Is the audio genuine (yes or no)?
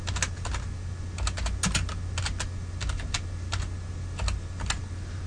yes